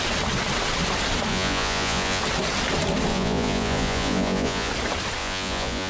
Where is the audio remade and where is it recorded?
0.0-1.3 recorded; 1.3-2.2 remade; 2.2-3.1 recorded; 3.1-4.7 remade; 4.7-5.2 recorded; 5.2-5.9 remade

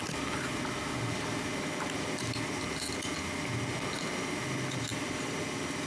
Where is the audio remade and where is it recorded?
0.0-5.9 recorded

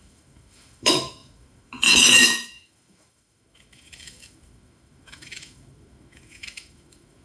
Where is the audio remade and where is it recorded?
0.0-7.2 remade

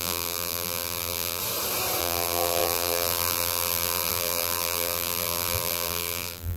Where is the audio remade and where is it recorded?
0.0-1.4 remade; 1.4-2.0 recorded; 2.0-6.6 remade

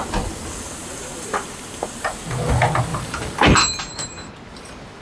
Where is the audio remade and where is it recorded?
0.0-0.8 recorded; 0.8-1.9 remade; 1.9-2.9 recorded; 2.9-4.3 remade; 4.3-5.0 recorded

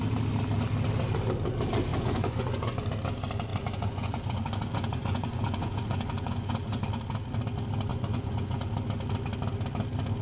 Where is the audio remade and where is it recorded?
0.0-1.9 recorded; 1.9-2.8 remade; 2.8-3.5 recorded; 3.5-6.8 remade; 6.8-7.9 recorded; 7.9-8.7 remade; 8.7-10.2 recorded